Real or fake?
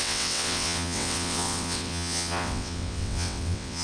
fake